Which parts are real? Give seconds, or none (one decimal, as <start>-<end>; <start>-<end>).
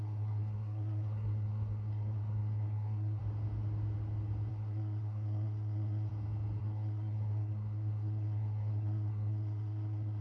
3.2-4.5; 6.1-6.6